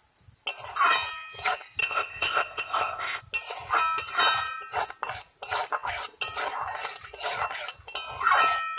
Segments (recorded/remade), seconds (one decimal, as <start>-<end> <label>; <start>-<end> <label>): 0.0-1.8 recorded; 1.8-3.2 remade; 3.2-8.8 recorded